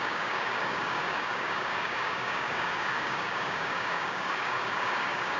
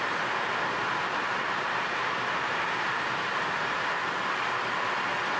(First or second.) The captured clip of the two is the second